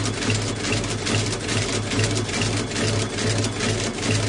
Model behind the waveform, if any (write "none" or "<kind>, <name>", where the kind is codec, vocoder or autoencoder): none